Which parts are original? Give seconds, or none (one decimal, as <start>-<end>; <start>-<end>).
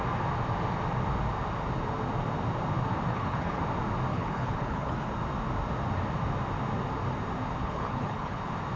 0.0-3.1; 3.6-4.1; 5.1-7.6; 8.4-8.8